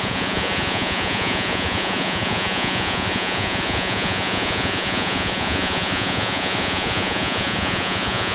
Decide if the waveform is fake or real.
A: fake